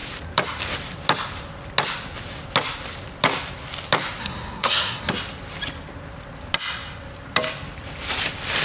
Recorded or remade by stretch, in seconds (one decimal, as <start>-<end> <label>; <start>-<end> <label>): 0.0-4.2 recorded; 4.2-5.1 remade; 5.1-8.6 recorded

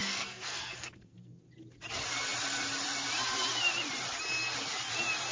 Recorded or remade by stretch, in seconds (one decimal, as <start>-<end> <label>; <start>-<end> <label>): 0.0-1.4 remade; 1.4-5.3 recorded

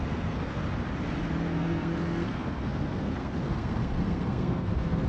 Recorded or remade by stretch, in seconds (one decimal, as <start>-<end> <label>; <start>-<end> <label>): 0.0-0.6 remade; 0.6-1.4 recorded; 1.4-5.1 remade

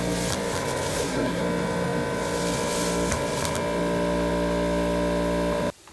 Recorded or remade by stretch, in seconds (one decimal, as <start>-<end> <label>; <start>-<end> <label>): 0.0-0.9 recorded; 0.9-1.4 remade; 1.4-5.9 recorded